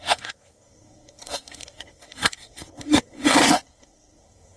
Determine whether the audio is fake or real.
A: fake